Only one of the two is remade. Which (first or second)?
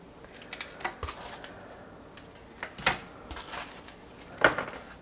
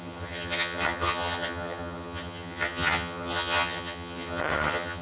second